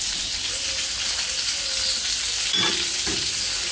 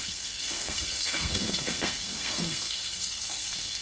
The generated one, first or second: second